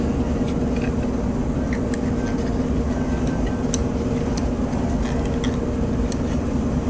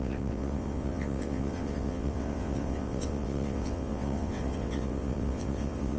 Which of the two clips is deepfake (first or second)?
second